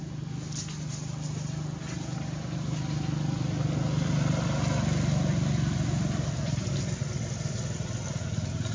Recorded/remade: recorded